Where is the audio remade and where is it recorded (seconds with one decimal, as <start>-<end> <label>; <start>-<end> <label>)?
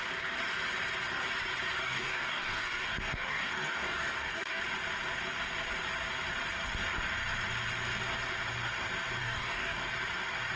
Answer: 0.0-1.8 recorded; 1.8-4.6 remade; 4.6-9.2 recorded; 9.2-9.8 remade; 9.8-10.6 recorded